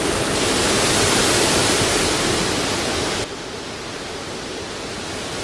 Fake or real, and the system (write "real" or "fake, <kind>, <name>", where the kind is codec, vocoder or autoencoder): real